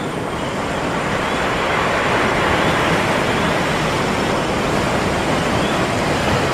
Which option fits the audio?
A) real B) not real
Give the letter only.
B